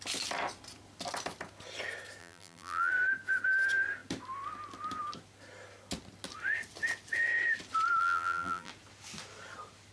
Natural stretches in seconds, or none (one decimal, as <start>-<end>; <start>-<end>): 0.0-2.2; 2.9-8.0; 8.7-9.9